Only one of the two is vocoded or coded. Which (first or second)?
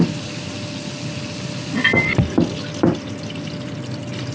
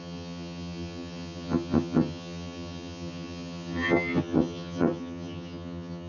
second